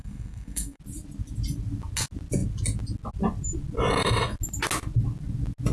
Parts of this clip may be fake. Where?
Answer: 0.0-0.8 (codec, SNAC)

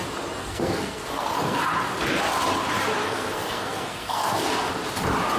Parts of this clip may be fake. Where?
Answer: 0.4-1.6 (codec, SNAC); 3.0-4.7

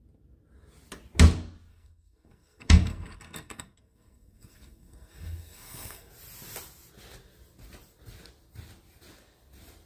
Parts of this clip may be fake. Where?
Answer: 1.7-6.1 (codec, SNAC)

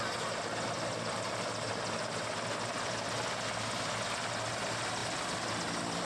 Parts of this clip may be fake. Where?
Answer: none

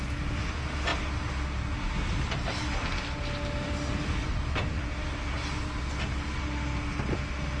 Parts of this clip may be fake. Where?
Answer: none

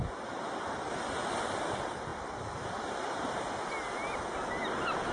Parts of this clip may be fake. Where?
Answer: none

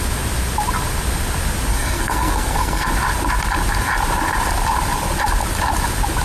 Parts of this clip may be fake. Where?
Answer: 1.7-2.9 (codec, SNAC)

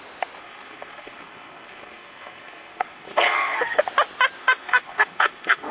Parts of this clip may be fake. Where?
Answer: 0.4-3.8 (codec, SNAC); 4.4-5.7